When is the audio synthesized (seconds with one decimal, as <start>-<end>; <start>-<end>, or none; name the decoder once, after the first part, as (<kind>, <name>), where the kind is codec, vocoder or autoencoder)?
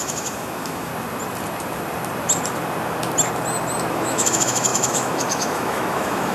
0.0-0.9 (autoencoder, DAC-VAE); 3.9-6.3